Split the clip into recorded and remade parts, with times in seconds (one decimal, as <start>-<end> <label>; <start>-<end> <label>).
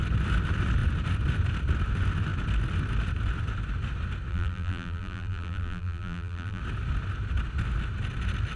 0.0-4.3 recorded; 4.3-6.6 remade; 6.6-8.6 recorded